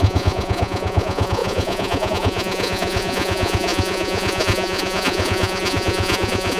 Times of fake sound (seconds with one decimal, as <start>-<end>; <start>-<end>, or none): 0.0-6.6